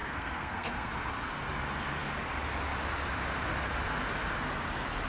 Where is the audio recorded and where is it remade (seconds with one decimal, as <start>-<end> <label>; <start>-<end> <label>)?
0.0-0.9 remade; 0.9-5.1 recorded